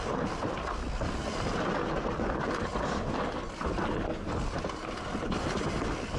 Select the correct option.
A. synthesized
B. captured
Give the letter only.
B